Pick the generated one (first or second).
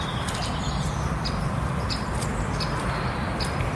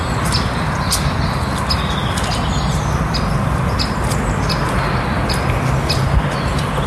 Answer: first